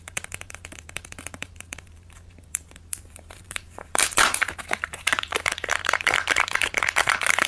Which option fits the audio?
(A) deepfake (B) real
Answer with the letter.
A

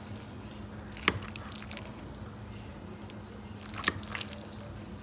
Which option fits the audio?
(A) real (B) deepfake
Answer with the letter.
A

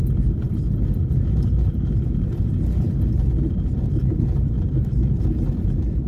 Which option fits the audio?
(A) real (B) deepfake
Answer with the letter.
A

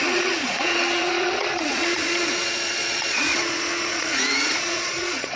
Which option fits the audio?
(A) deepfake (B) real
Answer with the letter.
A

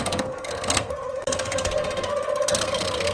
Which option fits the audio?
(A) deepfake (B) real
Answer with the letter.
A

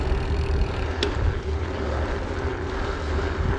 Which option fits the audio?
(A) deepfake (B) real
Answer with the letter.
B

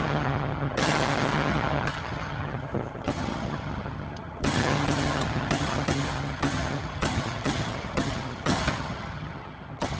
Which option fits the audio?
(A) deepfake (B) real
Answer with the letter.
A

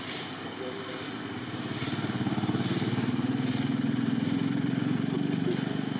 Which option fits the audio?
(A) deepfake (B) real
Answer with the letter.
B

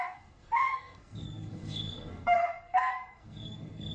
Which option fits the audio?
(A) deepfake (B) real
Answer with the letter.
A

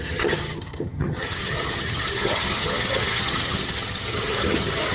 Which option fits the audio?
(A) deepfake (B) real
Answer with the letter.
A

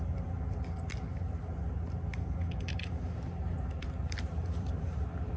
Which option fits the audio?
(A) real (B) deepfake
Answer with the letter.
B